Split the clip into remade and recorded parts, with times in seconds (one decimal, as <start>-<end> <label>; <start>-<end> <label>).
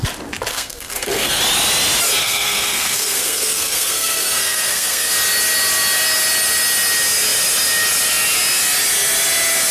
0.0-0.5 recorded; 0.5-1.4 remade; 1.4-2.2 recorded; 2.2-5.1 remade; 5.1-9.7 recorded